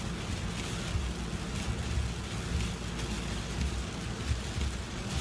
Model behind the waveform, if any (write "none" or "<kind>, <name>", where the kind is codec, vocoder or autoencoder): none